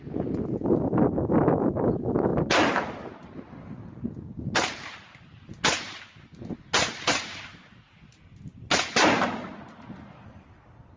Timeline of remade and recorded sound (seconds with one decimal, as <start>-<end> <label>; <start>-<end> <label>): 0.0-11.0 recorded